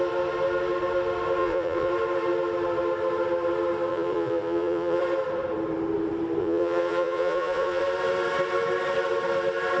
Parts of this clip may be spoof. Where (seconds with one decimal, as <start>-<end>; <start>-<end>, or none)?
1.4-1.9; 3.9-5.0; 6.4-7.8